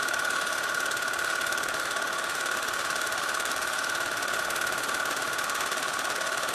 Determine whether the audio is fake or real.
fake